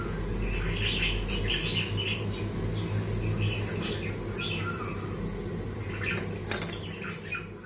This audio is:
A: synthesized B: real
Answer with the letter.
B